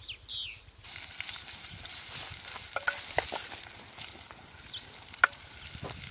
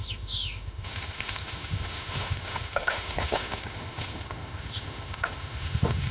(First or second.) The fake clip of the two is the second